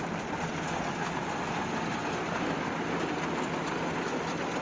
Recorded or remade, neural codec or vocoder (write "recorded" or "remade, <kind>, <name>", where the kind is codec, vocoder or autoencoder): recorded